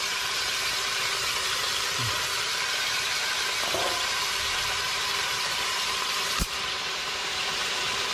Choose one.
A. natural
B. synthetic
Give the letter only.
B